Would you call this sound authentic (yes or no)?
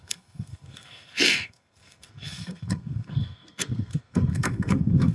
no